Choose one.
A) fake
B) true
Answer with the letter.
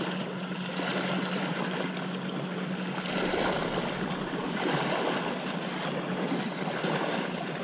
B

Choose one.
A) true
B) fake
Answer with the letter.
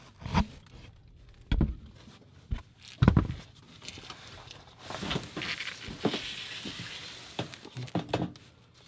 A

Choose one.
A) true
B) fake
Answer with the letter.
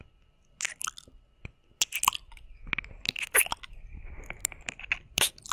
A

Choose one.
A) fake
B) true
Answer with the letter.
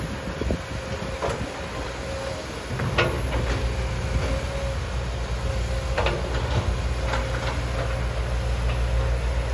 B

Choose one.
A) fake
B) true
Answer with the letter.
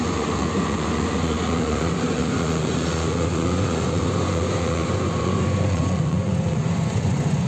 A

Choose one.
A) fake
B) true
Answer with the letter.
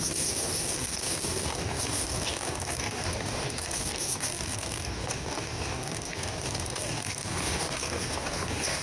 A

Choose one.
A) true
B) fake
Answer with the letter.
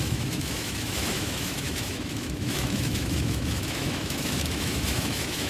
B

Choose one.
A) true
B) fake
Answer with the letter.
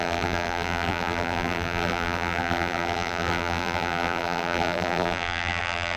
B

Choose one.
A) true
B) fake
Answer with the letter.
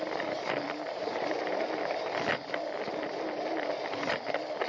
A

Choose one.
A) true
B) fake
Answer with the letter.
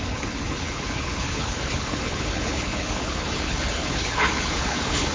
B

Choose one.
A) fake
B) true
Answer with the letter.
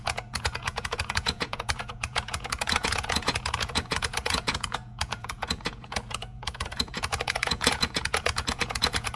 A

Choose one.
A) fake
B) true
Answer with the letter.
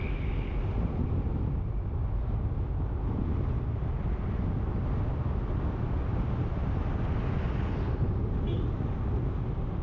B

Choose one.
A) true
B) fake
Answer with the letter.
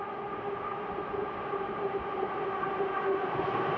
A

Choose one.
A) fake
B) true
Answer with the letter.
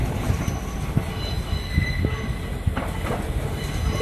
B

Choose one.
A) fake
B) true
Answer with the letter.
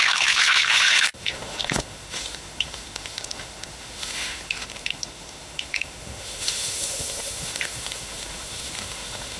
A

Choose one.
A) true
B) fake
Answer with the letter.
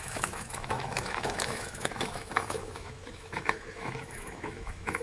B